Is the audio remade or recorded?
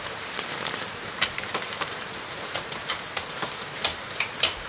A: remade